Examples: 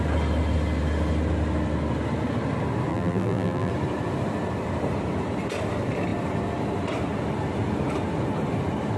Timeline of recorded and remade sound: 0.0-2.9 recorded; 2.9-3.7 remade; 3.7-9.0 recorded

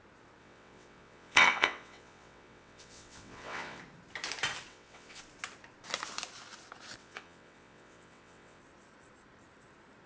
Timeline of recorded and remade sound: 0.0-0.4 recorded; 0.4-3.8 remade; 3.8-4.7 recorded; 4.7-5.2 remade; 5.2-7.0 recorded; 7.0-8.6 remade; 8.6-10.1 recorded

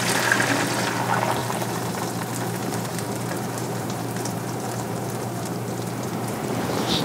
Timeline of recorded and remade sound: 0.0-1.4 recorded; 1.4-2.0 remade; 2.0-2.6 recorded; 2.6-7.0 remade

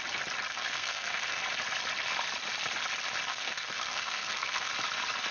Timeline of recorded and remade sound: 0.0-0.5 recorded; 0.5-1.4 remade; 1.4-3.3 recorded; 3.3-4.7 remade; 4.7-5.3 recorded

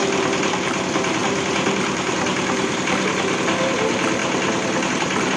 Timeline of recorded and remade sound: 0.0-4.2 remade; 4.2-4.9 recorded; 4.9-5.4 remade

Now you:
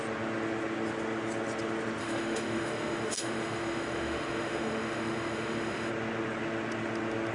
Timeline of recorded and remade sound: 0.0-2.0 recorded; 2.0-5.9 remade; 5.9-7.3 recorded